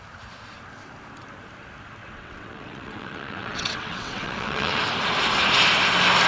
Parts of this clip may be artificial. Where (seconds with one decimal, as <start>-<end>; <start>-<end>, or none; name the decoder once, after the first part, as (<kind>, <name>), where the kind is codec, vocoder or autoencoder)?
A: 2.0-4.8 (vocoder, WaveNeXt)